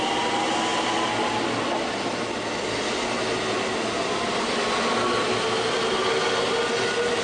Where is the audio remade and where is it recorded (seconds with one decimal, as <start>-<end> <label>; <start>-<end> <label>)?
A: 0.0-7.2 recorded